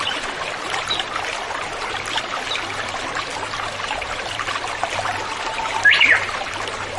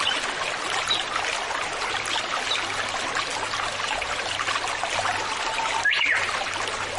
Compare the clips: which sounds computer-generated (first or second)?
first